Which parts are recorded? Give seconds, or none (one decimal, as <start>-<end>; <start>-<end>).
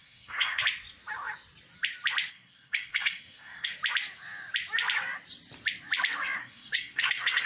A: 0.6-2.3; 3.7-6.4